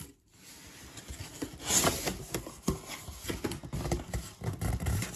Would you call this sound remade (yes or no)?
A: no